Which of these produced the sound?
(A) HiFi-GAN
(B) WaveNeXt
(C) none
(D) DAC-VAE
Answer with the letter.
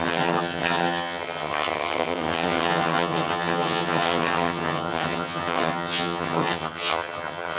A